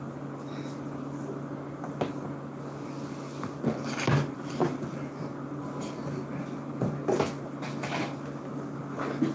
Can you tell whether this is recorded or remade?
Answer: recorded